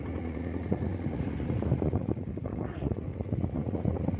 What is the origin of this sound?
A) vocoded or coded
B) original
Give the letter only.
A